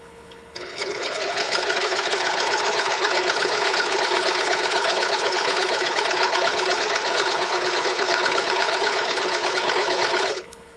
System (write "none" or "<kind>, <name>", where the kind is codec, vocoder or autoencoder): codec, HILCodec